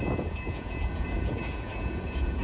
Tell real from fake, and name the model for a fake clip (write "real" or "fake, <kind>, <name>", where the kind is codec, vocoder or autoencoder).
fake, vocoder, Vocos